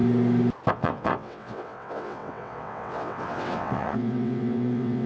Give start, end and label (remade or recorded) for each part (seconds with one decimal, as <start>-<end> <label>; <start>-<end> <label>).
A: 0.0-0.7 recorded; 0.7-5.1 remade